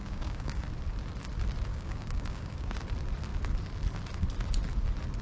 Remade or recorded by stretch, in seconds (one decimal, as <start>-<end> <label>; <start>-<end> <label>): 0.0-0.6 remade; 0.6-1.7 recorded; 1.7-2.7 remade; 2.7-5.2 recorded